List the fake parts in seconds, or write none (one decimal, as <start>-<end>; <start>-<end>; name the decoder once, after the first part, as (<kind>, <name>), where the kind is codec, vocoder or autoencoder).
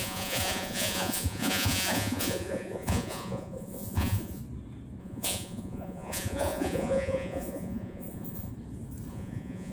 0.0-4.4 (vocoder, Vocos); 5.0-8.5; 9.1-9.7